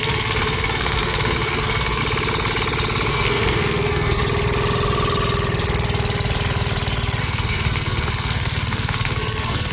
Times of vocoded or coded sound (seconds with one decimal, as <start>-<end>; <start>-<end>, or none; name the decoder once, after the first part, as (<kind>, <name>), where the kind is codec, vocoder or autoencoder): 0.0-2.0 (codec, SNAC); 3.1-4.2; 7.2-9.7